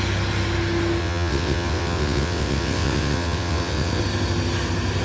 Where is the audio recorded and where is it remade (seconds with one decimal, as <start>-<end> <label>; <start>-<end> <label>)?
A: 0.0-1.0 recorded; 1.0-4.0 remade; 4.0-5.0 recorded